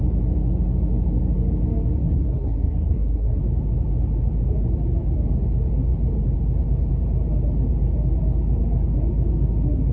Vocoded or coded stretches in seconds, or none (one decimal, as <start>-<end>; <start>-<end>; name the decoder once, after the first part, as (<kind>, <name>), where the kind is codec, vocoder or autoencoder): 2.0-3.4 (codec, SNAC)

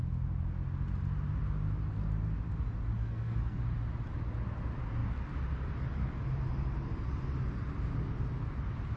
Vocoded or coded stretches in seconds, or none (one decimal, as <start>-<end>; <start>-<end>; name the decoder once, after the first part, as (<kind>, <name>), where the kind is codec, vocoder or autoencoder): 3.0-3.6 (codec, SNAC)

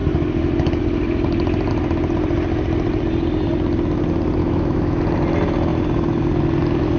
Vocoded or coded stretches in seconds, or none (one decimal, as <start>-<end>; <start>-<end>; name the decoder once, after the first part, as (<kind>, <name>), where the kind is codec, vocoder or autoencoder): 4.4-5.0 (autoencoder, DAC-VAE)

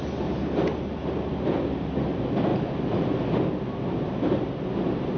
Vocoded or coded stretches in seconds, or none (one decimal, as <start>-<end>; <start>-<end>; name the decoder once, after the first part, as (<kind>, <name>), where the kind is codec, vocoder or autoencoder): none

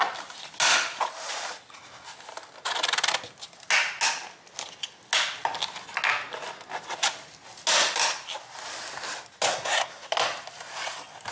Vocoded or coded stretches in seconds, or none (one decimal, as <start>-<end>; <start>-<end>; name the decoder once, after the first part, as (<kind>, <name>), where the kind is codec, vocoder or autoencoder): 9.5-10.1 (codec, SNAC)

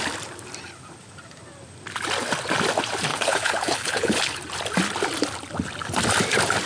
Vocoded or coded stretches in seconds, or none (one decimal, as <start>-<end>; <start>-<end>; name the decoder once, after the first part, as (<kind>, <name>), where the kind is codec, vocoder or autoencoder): 3.1-4.4 (codec, HILCodec)

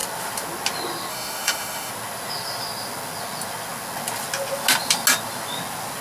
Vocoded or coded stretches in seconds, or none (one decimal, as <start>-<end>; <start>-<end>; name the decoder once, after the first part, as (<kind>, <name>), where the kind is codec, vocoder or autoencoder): 1.1-1.9 (autoencoder, DAC-VAE)

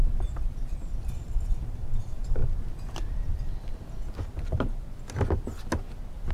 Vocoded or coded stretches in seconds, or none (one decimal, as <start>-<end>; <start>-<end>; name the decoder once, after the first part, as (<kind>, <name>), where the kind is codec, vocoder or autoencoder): 0.0-2.4 (vocoder, BigVGAN v2)